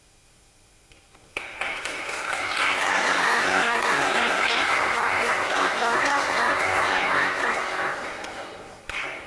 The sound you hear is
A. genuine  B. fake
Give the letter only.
B